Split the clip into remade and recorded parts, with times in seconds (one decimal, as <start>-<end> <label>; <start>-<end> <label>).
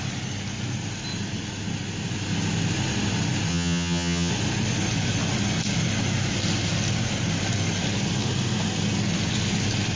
0.0-3.5 recorded; 3.5-4.3 remade; 4.3-10.0 recorded